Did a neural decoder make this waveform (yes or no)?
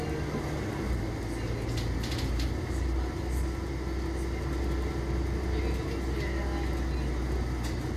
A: no